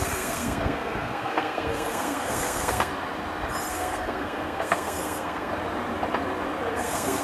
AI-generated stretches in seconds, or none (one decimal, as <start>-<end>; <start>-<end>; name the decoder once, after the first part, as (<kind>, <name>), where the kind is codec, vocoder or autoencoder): 0.0-2.9 (codec, SNAC); 3.7-5.5; 6.7-7.2